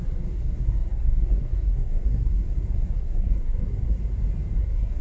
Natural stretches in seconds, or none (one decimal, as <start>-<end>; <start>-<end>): 4.0-4.6